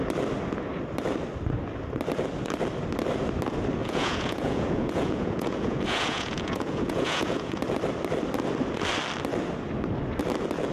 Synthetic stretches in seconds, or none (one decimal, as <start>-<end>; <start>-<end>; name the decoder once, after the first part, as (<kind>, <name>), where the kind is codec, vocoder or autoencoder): 3.8-7.6 (vocoder, Vocos)